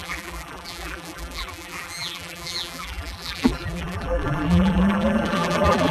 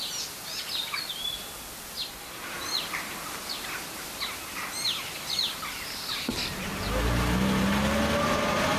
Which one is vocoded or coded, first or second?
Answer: first